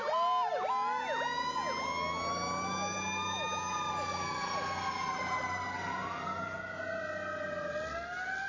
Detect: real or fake real